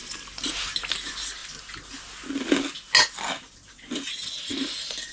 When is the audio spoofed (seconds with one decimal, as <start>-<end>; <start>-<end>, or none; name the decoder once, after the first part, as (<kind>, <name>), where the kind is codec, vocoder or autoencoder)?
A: none